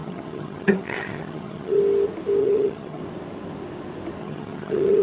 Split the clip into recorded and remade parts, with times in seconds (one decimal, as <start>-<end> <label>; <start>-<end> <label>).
0.0-1.8 remade; 1.8-2.4 recorded; 2.4-3.0 remade; 3.0-4.2 recorded; 4.2-5.0 remade